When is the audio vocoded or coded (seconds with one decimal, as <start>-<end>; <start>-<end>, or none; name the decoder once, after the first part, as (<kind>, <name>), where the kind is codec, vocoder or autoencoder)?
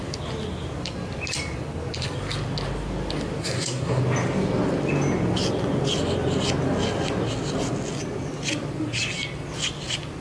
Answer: 3.4-4.0 (codec, SNAC)